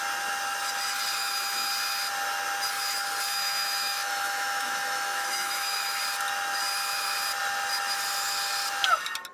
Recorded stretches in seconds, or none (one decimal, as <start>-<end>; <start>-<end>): 0.0-1.2; 1.7-3.3; 6.0-9.3